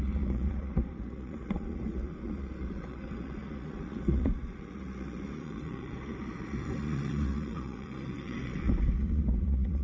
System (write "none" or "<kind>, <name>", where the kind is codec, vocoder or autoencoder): vocoder, Vocos